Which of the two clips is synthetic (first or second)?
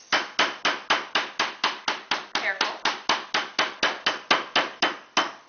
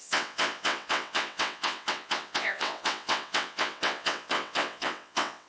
second